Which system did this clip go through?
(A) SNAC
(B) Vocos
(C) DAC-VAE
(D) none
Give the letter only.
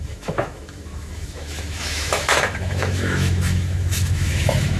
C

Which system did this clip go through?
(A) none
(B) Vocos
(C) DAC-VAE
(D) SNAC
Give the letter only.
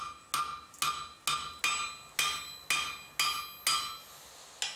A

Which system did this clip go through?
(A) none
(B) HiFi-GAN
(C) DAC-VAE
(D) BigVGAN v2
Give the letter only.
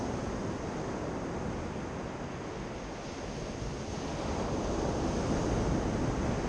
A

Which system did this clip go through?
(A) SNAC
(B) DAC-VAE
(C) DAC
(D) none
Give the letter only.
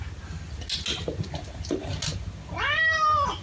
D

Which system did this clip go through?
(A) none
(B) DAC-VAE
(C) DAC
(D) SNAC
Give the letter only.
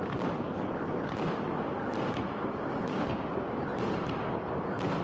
A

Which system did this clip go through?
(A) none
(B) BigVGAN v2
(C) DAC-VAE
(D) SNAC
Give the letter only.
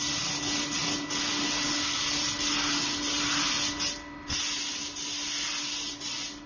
A